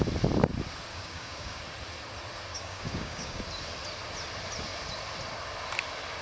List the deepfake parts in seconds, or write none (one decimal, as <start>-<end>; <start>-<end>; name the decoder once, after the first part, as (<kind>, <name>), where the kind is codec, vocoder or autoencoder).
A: 0.9-1.6 (codec, DAC); 2.5-3.4